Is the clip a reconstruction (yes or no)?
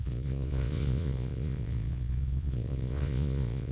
yes